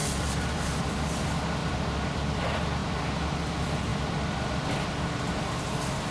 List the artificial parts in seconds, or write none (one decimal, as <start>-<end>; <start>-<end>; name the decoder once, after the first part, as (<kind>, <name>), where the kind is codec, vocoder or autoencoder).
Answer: 0.0-1.2 (vocoder, BigVGAN v2); 1.6-2.4; 2.8-3.3; 3.9-4.7